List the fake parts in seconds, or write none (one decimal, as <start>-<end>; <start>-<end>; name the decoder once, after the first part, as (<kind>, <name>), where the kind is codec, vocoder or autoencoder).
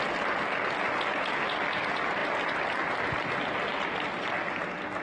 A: none